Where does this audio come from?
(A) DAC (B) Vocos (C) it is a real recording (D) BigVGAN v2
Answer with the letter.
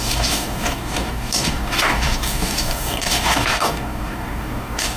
A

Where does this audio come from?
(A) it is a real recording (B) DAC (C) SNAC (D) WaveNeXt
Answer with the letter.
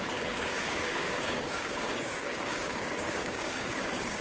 B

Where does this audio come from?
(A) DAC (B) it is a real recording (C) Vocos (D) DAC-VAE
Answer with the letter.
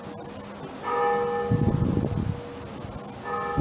B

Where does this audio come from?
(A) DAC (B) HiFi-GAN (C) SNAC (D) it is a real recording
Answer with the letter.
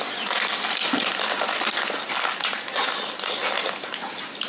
D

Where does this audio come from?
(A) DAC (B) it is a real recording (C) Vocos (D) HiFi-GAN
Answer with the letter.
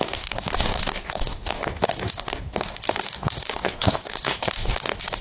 A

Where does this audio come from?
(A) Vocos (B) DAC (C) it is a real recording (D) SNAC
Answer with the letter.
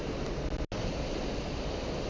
C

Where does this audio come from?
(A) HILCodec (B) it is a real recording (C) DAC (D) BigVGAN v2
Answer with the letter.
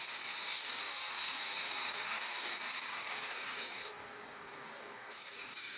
C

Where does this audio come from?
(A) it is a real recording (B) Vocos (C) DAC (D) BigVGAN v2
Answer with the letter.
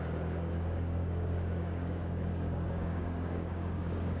C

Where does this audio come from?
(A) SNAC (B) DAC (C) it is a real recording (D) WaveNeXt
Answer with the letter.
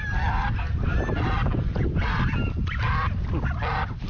C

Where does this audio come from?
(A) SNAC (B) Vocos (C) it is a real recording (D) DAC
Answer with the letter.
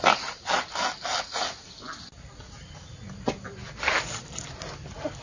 C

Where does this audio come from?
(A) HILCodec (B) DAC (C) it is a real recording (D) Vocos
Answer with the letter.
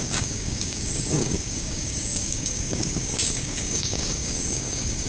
B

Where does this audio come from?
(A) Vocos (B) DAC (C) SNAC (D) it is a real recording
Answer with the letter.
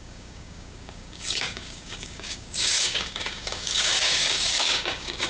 B